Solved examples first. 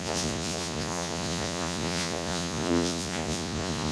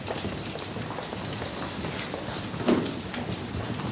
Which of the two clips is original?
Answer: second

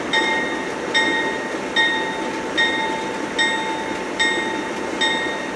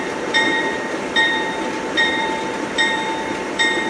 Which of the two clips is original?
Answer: first